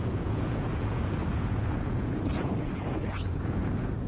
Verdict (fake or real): fake